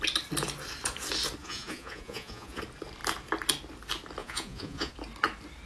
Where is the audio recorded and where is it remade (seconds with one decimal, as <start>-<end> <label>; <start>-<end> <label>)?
0.0-1.4 recorded; 1.4-2.6 remade; 2.6-4.2 recorded; 4.2-4.9 remade; 4.9-5.7 recorded